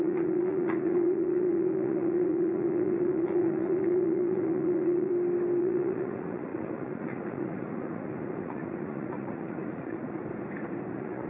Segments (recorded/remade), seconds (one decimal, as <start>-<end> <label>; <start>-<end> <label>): 0.0-5.1 remade; 5.1-5.6 recorded; 5.6-10.2 remade; 10.2-10.9 recorded; 10.9-11.3 remade